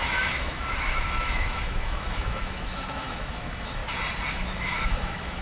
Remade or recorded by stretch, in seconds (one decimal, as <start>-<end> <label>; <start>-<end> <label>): 0.0-3.8 remade; 3.8-4.3 recorded; 4.3-5.4 remade